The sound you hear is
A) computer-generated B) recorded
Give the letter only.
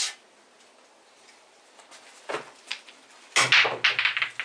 B